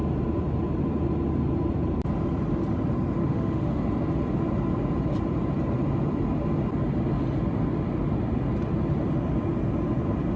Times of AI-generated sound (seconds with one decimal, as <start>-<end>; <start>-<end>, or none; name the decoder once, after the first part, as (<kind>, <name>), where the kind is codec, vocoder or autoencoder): 3.2-3.8 (autoencoder, DAC-VAE)